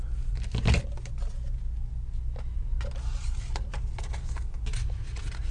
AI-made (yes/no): no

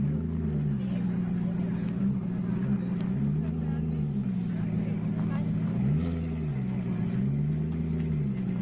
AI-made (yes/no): no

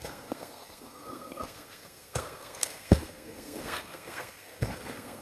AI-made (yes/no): yes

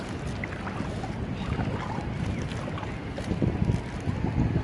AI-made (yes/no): no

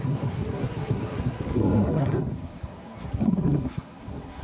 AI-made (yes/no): yes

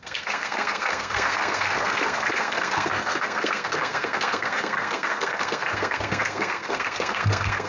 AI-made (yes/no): yes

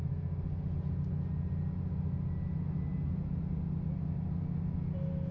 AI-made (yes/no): no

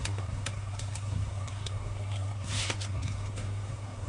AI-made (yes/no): yes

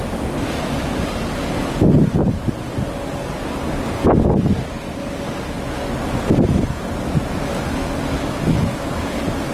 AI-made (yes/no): no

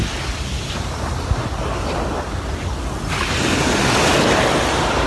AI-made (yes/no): no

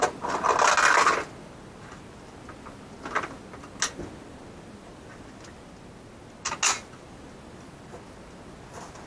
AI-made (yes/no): no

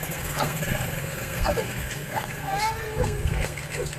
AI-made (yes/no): yes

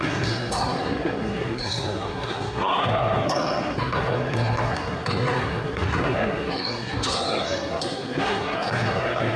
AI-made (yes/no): yes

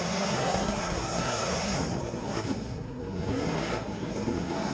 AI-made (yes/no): yes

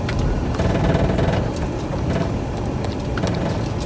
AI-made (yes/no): no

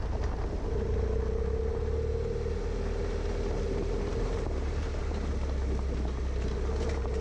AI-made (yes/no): no